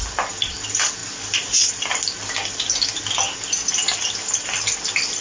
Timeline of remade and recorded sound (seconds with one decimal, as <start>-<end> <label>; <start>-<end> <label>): 0.0-5.2 recorded